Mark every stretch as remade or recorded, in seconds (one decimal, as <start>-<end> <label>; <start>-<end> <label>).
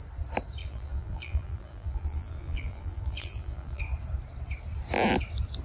0.0-0.6 recorded; 0.6-3.8 remade; 3.8-5.6 recorded